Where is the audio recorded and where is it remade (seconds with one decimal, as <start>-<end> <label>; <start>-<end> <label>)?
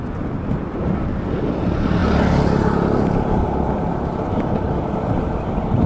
0.0-5.9 recorded